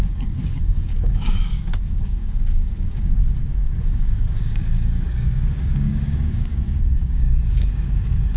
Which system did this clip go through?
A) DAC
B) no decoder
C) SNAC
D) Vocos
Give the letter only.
A